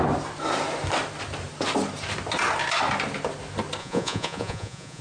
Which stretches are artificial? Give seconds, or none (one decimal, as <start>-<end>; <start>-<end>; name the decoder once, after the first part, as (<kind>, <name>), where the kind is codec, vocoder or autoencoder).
3.8-5.0 (vocoder, Vocos)

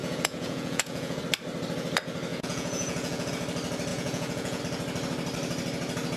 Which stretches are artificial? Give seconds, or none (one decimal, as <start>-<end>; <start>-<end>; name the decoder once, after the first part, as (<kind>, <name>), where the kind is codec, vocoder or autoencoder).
0.0-1.2 (vocoder, Vocos); 2.3-3.3; 3.9-4.6

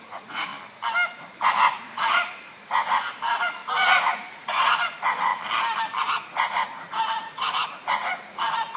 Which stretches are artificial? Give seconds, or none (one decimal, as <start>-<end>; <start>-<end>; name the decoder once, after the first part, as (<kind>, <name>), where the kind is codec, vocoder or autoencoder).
0.0-0.5 (vocoder, Vocos); 1.1-5.3; 6.0-8.8

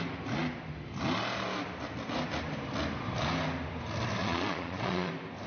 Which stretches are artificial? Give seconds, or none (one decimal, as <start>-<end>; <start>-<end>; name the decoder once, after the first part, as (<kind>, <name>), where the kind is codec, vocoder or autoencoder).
4.2-5.1 (vocoder, Vocos)

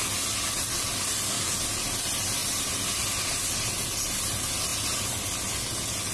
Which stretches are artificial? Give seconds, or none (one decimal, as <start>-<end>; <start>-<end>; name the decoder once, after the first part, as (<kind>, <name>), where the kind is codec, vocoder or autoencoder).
none

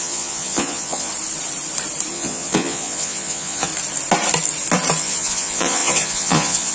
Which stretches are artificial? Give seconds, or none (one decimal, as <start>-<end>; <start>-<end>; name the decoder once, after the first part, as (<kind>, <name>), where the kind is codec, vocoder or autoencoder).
0.0-1.1 (vocoder, Vocos); 2.1-3.7; 5.0-6.7

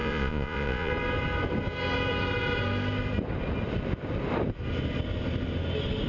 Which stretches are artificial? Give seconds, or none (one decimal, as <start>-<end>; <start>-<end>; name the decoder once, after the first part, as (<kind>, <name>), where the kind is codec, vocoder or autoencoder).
0.0-0.9 (vocoder, Vocos)

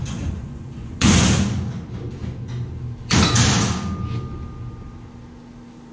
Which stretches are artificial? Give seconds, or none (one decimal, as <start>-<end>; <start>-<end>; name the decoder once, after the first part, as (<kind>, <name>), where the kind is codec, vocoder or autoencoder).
0.4-1.1 (vocoder, Vocos)